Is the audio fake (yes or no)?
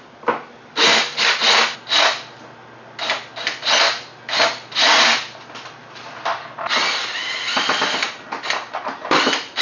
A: no